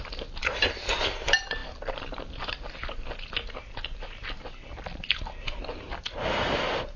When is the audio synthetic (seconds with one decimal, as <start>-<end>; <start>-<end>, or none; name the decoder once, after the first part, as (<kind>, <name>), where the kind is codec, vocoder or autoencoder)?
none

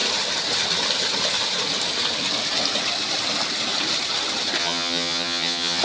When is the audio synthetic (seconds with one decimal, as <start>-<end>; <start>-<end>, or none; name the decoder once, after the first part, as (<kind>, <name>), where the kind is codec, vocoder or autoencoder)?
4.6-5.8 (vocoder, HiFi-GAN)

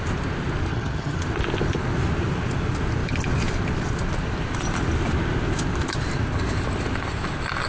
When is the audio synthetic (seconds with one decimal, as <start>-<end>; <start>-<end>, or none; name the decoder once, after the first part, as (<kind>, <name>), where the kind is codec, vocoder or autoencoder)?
0.7-1.2 (vocoder, HiFi-GAN)